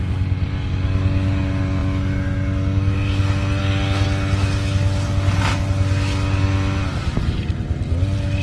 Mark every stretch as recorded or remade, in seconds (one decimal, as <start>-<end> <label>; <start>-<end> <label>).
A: 0.0-8.4 recorded